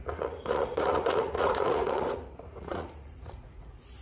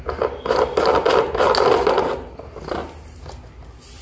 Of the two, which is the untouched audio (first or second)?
second